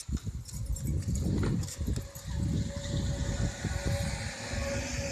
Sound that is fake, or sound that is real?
real